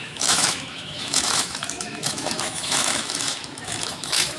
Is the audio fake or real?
fake